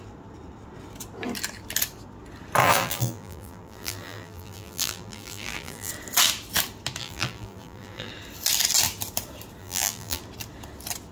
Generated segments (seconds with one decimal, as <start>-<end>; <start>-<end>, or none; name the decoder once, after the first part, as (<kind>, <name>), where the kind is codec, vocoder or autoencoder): 2.6-5.9 (vocoder, BigVGAN v2); 7.0-8.1; 9.6-10.2